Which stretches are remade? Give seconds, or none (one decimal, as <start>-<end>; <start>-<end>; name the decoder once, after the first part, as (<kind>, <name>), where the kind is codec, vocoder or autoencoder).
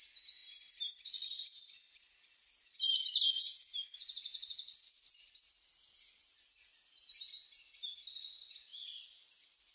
4.3-5.4 (vocoder, BigVGAN v2)